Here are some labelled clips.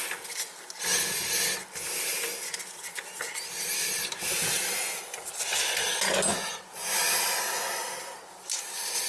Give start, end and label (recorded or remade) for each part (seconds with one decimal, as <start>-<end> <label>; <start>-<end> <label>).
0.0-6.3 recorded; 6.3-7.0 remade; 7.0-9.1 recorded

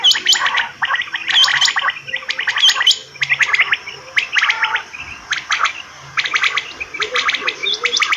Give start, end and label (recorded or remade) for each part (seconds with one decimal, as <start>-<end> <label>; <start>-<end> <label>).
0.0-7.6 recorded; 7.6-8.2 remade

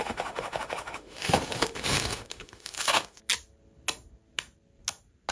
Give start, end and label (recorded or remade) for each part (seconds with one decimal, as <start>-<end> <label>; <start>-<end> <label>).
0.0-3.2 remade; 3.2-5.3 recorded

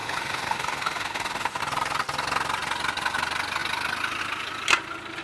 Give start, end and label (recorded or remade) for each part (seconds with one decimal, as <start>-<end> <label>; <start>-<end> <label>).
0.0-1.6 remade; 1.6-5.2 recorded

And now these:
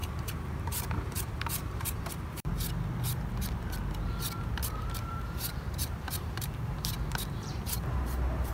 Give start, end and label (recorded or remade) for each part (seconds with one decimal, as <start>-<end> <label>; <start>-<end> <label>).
0.0-2.5 remade; 2.5-5.1 recorded; 5.1-8.5 remade

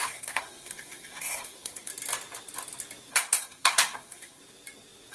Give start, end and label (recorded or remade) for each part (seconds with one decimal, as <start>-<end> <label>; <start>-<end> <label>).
0.0-1.9 remade; 1.9-3.1 recorded; 3.1-4.4 remade; 4.4-5.1 recorded

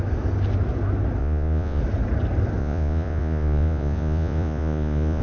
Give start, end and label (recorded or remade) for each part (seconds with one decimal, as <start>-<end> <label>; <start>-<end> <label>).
0.0-1.2 recorded; 1.2-1.8 remade; 1.8-2.6 recorded; 2.6-5.2 remade

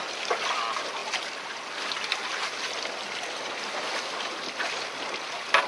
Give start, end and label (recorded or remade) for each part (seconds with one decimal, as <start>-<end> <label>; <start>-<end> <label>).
0.0-5.7 recorded